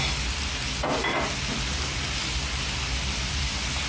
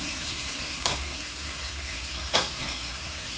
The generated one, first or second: second